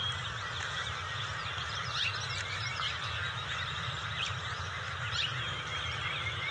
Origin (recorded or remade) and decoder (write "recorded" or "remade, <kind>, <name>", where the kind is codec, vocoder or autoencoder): remade, vocoder, BigVGAN v2